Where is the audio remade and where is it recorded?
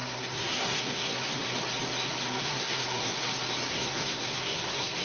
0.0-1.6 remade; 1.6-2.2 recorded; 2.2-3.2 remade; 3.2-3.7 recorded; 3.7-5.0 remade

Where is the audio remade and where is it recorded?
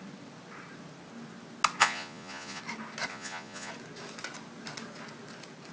0.0-1.8 recorded; 1.8-2.6 remade; 2.6-3.1 recorded; 3.1-3.7 remade; 3.7-5.7 recorded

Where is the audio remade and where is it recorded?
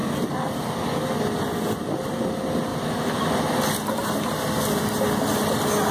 0.0-5.9 recorded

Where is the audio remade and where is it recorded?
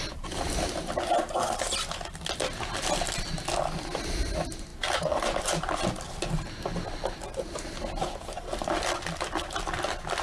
0.0-10.2 recorded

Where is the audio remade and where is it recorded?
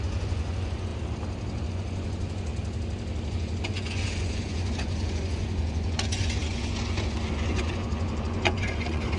0.0-0.9 remade; 0.9-1.7 recorded; 1.7-2.5 remade; 2.5-3.3 recorded; 3.3-9.2 remade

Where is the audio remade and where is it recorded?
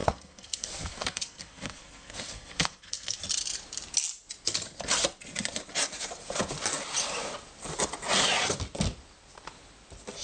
0.0-3.2 remade; 3.2-10.2 recorded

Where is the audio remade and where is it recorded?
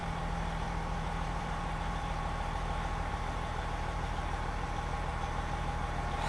0.0-6.3 remade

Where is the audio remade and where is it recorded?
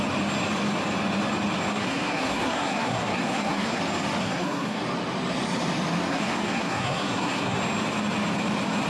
0.0-1.7 recorded; 1.7-3.8 remade; 3.8-4.2 recorded; 4.2-4.8 remade; 4.8-6.1 recorded; 6.1-7.6 remade; 7.6-8.9 recorded